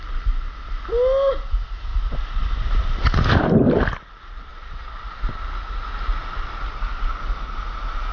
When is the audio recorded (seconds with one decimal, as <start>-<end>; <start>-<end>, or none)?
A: 0.0-8.1